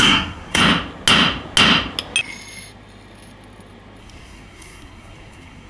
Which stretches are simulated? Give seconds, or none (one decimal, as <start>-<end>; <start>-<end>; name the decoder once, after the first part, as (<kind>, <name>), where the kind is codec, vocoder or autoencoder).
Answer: 0.0-0.6 (codec, SNAC); 4.0-5.7